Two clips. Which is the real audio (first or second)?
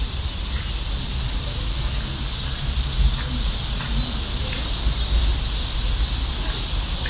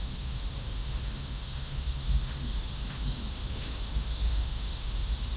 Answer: first